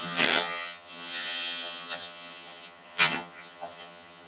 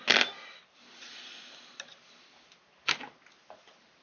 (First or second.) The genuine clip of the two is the second